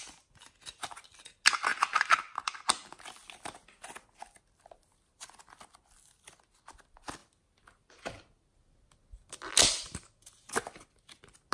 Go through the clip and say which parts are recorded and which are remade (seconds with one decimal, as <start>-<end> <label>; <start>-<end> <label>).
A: 0.0-11.5 recorded